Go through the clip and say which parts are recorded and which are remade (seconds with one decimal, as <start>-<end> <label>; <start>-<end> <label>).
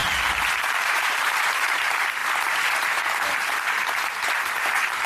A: 0.0-0.7 recorded; 0.7-5.1 remade